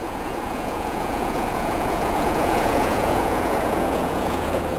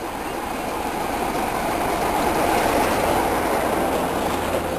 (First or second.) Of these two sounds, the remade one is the first